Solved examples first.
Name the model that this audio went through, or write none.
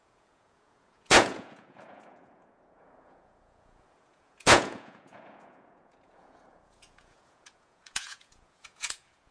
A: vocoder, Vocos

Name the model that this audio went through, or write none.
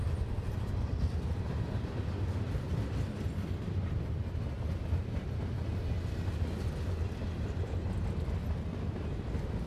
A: none